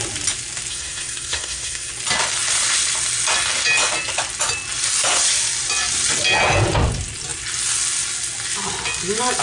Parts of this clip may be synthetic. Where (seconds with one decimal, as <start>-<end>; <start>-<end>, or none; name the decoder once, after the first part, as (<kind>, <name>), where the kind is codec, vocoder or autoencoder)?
0.7-1.9 (codec, SNAC)

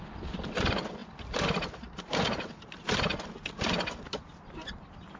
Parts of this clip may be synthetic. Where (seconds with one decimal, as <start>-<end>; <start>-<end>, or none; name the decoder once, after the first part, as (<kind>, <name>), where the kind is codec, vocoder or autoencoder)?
none

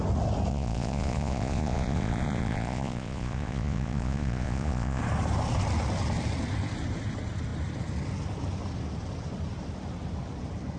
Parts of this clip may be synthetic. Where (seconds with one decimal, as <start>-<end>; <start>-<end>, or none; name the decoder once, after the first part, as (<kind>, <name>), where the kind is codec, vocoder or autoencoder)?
0.5-5.0 (vocoder, Vocos)

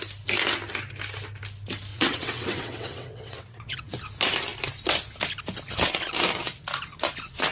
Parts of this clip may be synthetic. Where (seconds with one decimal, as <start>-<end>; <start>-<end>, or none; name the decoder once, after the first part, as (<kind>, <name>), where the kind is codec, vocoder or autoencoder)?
1.9-4.0 (vocoder, WaveNeXt)

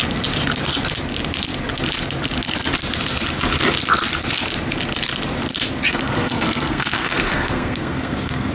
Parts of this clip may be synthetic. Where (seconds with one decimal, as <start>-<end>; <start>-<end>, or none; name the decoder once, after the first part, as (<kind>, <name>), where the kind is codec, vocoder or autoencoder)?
5.9-8.5 (codec, SNAC)

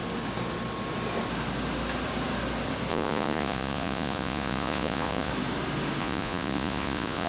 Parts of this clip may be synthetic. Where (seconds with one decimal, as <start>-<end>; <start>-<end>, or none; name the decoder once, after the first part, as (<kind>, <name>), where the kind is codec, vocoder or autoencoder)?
2.9-5.3 (vocoder, Vocos); 6.0-7.3